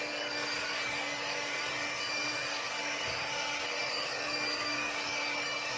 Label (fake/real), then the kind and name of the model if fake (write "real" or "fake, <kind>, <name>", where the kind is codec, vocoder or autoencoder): fake, codec, DAC